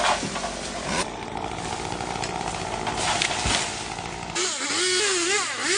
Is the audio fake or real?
real